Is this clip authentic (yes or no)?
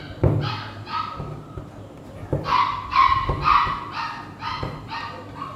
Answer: yes